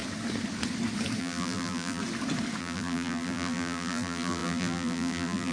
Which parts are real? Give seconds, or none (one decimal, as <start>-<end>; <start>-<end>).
0.0-1.2; 2.0-2.6